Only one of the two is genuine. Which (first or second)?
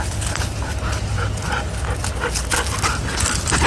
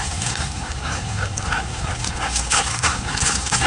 first